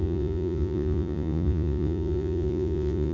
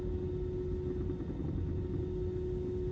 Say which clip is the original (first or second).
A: second